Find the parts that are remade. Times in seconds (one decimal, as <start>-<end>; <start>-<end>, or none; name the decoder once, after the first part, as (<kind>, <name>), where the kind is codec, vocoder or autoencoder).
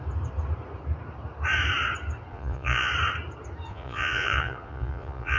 2.3-2.9 (vocoder, Vocos); 3.7-5.4